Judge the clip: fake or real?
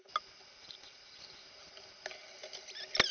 real